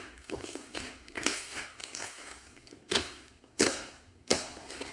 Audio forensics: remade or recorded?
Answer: remade